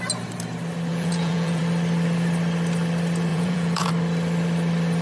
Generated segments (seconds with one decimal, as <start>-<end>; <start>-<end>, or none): 0.9-1.6; 3.3-3.9